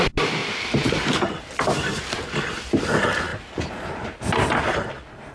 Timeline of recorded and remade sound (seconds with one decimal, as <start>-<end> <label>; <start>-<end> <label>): 0.0-0.4 recorded; 0.4-1.1 remade; 1.1-3.3 recorded; 3.3-4.7 remade; 4.7-5.3 recorded